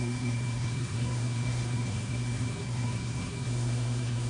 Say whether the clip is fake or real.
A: fake